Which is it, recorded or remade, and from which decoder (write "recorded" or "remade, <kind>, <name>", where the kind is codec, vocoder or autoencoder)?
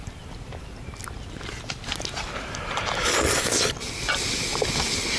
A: recorded